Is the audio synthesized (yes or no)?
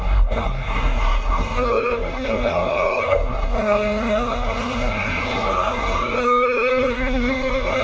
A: yes